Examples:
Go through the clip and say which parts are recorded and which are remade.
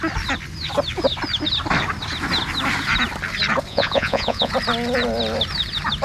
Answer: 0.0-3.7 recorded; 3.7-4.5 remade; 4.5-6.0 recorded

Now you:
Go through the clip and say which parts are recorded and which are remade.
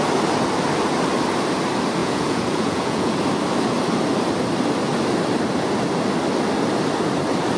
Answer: 0.0-2.0 recorded; 2.0-3.1 remade; 3.1-7.6 recorded